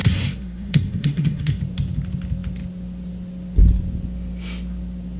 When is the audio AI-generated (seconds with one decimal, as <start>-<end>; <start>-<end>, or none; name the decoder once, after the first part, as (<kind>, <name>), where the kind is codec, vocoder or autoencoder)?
0.0-1.6 (codec, SNAC)